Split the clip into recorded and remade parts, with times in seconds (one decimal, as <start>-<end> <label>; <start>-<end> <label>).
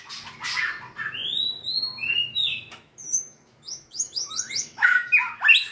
0.0-2.3 recorded; 2.3-5.1 remade; 5.1-5.7 recorded